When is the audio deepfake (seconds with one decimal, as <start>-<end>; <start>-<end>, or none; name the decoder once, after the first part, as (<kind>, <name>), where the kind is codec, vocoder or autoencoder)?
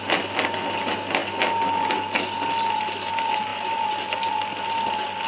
none